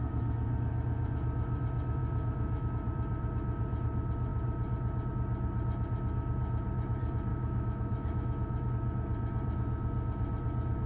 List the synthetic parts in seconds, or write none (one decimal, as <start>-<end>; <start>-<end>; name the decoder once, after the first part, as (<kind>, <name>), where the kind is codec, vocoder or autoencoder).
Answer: 2.0-2.7 (autoencoder, DAC-VAE); 7.3-8.7